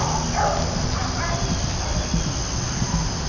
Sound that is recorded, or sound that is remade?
recorded